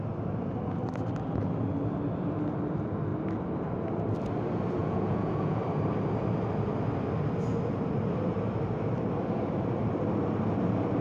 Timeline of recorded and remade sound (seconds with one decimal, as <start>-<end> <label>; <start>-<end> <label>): 0.0-4.8 recorded; 4.8-5.6 remade; 5.6-11.0 recorded